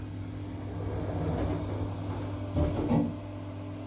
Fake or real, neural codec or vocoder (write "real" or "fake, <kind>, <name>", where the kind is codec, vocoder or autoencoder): real